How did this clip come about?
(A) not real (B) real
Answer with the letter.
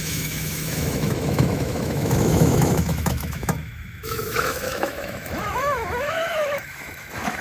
A